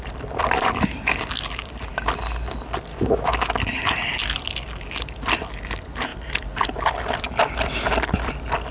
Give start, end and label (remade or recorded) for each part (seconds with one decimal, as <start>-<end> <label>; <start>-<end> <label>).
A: 0.0-2.9 recorded; 2.9-3.5 remade; 3.5-8.7 recorded